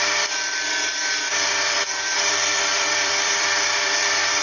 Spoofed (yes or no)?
yes